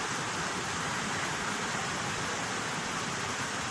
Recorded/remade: recorded